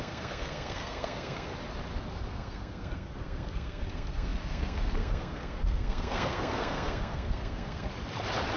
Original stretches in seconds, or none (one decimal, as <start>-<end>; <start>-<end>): 1.5-2.3; 7.9-8.6